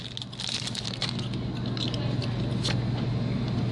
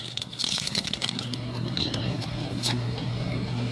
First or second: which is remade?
second